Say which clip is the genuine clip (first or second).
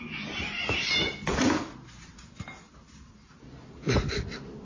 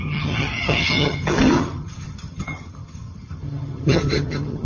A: first